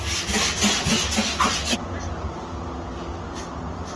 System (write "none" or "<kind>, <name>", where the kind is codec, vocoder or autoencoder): none